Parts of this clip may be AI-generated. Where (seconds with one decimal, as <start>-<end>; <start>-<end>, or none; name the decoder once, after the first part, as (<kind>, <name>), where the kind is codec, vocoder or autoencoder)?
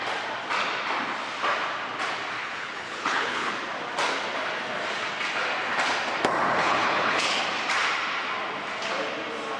2.4-3.5 (codec, HILCodec); 6.6-7.4